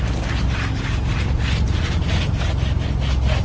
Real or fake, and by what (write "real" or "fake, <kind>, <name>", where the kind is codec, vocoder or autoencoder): real